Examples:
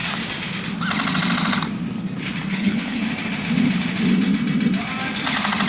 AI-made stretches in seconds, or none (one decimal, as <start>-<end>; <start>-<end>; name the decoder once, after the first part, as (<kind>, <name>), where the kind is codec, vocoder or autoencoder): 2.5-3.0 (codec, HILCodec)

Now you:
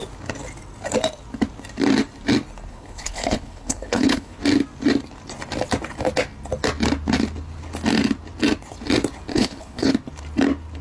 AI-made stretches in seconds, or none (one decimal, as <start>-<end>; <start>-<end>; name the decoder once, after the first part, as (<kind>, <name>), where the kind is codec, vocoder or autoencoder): 2.7-4.4 (codec, HILCodec); 9.3-9.9

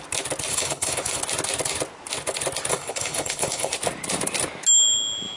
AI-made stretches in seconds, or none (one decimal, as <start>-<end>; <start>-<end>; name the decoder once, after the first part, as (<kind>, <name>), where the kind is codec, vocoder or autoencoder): 0.5-1.2 (codec, HILCodec); 2.7-3.7